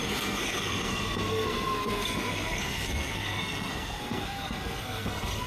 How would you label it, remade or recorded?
remade